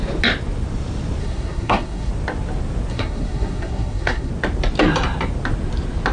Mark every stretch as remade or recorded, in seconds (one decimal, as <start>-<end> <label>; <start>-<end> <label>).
0.0-1.2 recorded; 1.2-2.1 remade; 2.1-2.9 recorded; 2.9-4.3 remade; 4.3-6.1 recorded

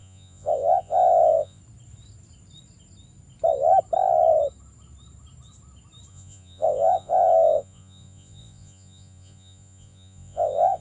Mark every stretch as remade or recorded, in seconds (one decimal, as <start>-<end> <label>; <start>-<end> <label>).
0.0-1.6 remade; 1.6-6.1 recorded; 6.1-10.8 remade

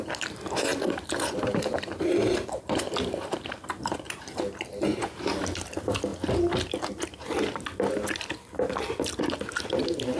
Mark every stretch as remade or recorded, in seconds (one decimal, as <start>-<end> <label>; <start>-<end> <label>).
0.0-6.1 remade; 6.1-6.9 recorded; 6.9-10.2 remade

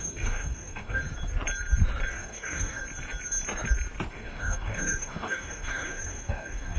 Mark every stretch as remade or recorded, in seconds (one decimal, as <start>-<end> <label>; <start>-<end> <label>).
0.0-1.0 remade; 1.0-2.1 recorded; 2.1-2.8 remade; 2.8-4.1 recorded; 4.1-6.8 remade

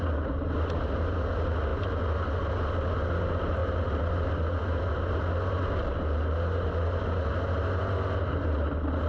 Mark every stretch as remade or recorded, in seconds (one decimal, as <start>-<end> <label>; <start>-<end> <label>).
0.0-9.1 recorded

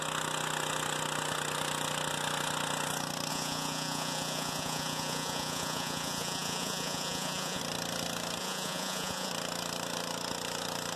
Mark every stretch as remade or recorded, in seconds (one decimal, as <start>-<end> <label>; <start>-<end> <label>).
0.0-3.3 recorded; 3.3-7.6 remade; 7.6-8.4 recorded; 8.4-9.3 remade; 9.3-11.0 recorded

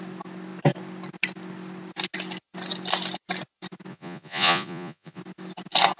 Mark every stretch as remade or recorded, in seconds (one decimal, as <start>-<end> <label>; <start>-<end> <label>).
0.0-3.9 recorded; 3.9-5.2 remade; 5.2-6.0 recorded